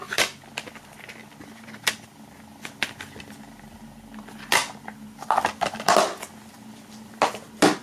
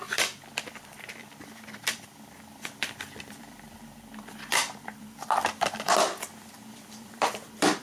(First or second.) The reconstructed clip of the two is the second